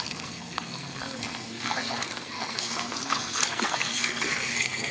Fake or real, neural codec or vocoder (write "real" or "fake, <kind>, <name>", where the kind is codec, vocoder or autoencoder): fake, codec, SNAC